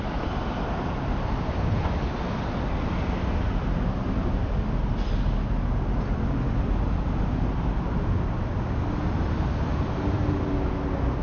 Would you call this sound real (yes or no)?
yes